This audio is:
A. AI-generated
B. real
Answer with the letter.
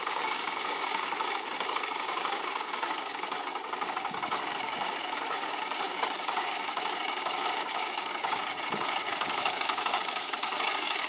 A